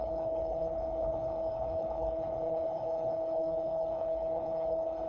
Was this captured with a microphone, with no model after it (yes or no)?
no